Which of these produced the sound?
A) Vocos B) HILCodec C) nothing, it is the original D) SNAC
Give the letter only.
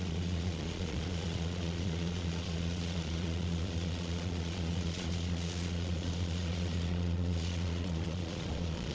A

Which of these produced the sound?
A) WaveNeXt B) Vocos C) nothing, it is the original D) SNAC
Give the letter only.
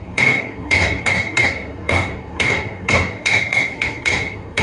D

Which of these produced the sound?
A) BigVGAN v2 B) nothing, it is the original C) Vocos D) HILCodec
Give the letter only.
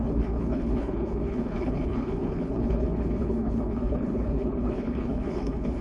D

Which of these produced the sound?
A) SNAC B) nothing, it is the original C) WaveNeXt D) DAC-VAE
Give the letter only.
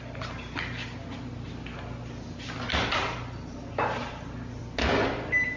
B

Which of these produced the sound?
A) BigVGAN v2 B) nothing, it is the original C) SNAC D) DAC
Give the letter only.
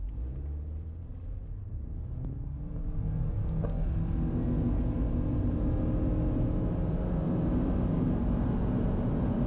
B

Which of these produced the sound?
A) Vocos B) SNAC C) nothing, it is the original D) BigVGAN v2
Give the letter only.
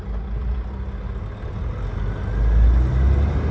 C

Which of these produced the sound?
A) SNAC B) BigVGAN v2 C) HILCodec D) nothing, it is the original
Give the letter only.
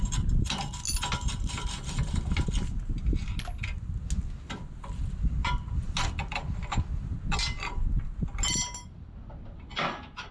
D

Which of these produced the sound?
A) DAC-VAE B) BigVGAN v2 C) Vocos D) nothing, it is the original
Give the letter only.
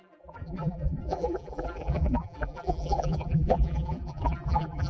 B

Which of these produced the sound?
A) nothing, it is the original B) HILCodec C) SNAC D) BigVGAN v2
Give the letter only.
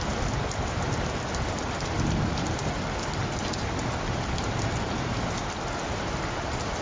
A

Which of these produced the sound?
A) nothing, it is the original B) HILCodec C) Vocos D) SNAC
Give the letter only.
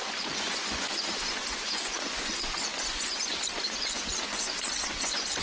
C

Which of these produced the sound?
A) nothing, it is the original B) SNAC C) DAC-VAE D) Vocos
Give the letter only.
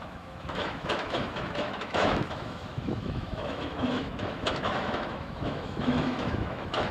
C